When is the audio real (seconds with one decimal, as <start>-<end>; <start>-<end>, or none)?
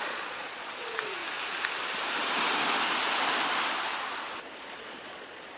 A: 1.2-4.6